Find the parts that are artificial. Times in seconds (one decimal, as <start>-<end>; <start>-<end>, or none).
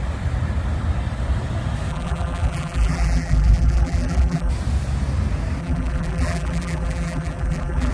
1.9-4.5; 5.6-7.9